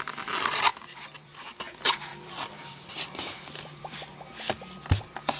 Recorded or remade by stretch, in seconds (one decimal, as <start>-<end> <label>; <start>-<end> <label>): 0.0-0.7 recorded; 0.7-1.6 remade; 1.6-2.1 recorded; 2.1-3.9 remade; 3.9-5.4 recorded